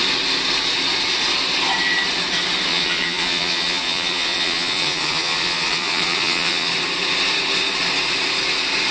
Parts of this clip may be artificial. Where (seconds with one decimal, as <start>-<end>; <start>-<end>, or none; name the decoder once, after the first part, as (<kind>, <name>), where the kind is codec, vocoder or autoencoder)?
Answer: 2.7-6.7 (vocoder, Vocos)